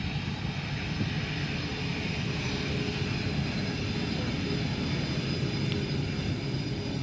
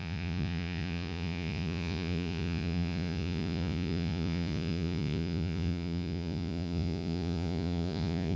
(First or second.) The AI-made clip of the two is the second